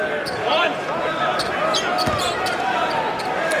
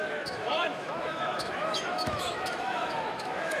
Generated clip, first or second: second